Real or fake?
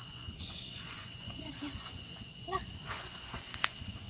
fake